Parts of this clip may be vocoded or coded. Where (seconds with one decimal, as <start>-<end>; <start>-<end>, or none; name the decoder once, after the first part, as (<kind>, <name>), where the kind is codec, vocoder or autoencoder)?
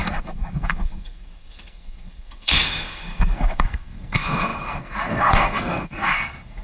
0.0-6.6 (codec, SNAC)